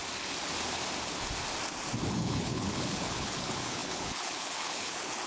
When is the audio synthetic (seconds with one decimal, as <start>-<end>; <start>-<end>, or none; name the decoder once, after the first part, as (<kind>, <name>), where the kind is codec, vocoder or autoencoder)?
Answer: 2.1-5.3 (codec, HILCodec)